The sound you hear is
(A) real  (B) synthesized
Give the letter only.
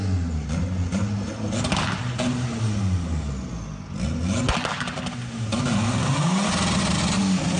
A